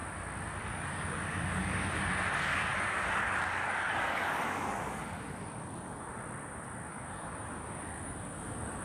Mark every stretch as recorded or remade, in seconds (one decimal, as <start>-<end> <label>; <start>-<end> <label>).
0.0-0.6 recorded; 0.6-6.0 remade; 6.0-6.9 recorded; 6.9-8.8 remade